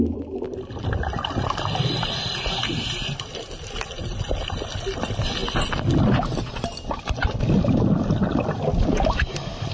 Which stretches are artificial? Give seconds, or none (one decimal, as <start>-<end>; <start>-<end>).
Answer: 0.0-5.4; 6.5-9.7